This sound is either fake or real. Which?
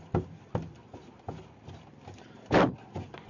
real